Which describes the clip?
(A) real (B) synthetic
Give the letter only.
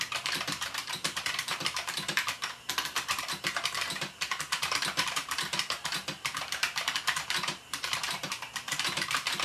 B